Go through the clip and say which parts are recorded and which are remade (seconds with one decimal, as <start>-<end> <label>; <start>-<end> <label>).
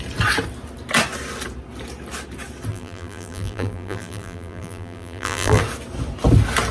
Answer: 0.0-2.7 recorded; 2.7-5.6 remade; 5.6-6.7 recorded